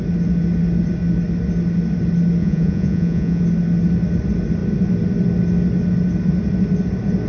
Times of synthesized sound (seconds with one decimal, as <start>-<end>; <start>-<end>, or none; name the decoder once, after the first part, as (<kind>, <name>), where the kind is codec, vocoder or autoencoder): 2.4-3.4 (vocoder, Vocos)